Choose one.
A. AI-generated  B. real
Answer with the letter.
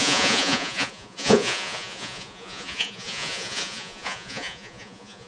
A